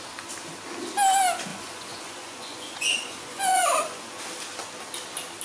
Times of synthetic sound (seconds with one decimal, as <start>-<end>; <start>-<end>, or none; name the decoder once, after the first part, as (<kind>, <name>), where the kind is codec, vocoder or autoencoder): 1.5-4.2 (vocoder, Vocos)